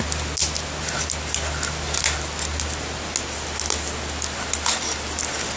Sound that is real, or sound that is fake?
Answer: real